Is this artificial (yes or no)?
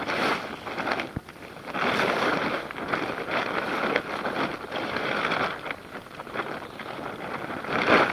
yes